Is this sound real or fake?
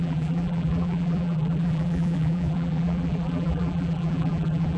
fake